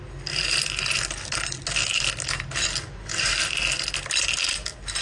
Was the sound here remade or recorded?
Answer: recorded